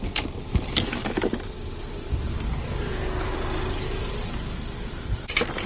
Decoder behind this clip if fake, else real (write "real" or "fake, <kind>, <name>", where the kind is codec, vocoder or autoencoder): fake, vocoder, BigVGAN v2